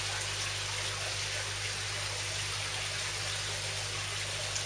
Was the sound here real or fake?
real